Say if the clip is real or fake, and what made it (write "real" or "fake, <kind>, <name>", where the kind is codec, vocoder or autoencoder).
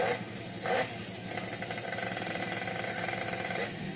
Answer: real